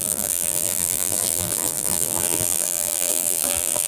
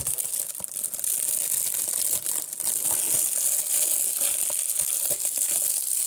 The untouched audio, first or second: second